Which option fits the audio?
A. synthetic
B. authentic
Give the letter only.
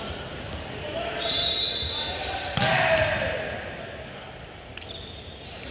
B